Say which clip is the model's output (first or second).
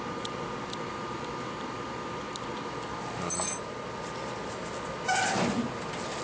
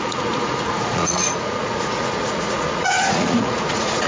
second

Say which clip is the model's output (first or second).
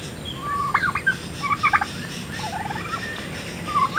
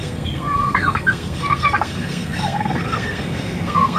second